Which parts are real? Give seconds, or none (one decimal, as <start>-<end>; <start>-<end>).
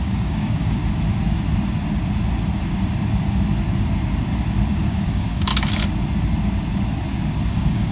0.8-4.7; 5.5-7.5